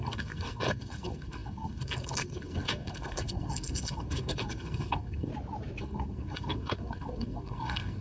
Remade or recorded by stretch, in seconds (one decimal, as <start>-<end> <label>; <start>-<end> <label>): 0.0-5.3 remade; 5.3-5.8 recorded; 5.8-8.0 remade